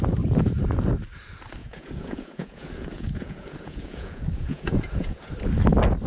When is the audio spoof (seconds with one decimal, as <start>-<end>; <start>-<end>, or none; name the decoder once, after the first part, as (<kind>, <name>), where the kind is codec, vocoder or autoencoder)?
1.6-5.3 (vocoder, Vocos)